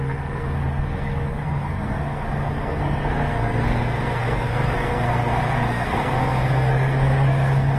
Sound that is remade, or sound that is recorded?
remade